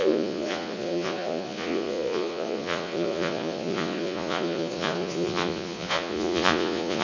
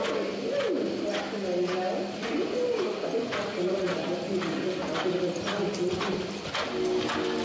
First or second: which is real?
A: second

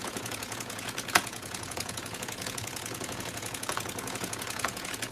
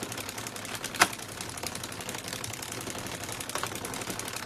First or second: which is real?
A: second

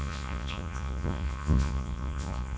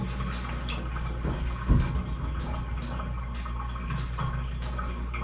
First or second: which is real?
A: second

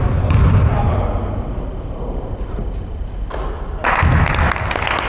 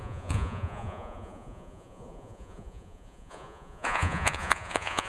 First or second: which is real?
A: first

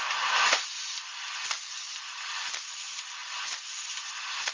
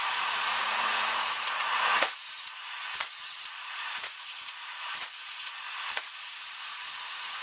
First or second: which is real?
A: first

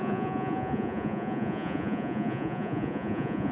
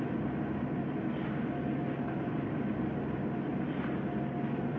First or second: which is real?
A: second